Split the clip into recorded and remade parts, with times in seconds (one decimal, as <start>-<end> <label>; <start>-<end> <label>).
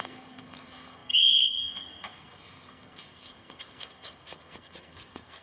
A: 0.0-5.4 remade